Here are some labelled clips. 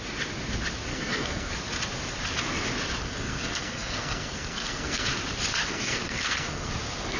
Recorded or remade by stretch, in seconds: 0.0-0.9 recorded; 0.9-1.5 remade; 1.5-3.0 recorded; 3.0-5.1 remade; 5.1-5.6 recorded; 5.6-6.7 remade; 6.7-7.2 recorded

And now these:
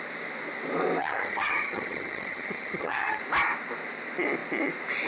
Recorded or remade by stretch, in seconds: 0.0-1.0 recorded; 1.0-3.2 remade; 3.2-5.1 recorded

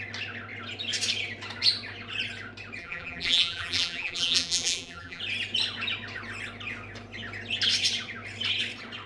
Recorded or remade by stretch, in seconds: 0.0-2.8 recorded; 2.8-5.2 remade; 5.2-9.1 recorded

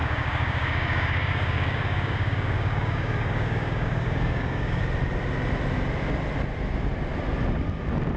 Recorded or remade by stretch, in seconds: 0.0-4.8 remade; 4.8-8.2 recorded

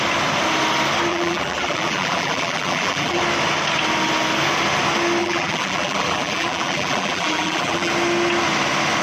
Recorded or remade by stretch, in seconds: 0.0-1.1 recorded; 1.1-3.2 remade; 3.2-5.2 recorded; 5.2-7.9 remade; 7.9-9.0 recorded